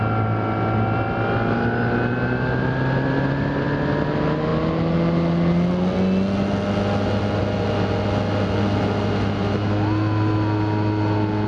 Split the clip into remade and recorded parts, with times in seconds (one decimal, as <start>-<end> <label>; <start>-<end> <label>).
0.0-11.5 recorded